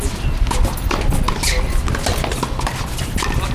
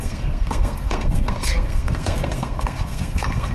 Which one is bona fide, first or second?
first